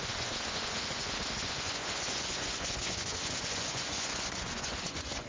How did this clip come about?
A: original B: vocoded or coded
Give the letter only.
B